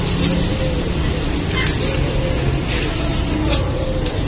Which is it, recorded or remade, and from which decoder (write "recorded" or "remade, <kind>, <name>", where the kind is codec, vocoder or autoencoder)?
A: recorded